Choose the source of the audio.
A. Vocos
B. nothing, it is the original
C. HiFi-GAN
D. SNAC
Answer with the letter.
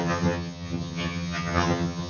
C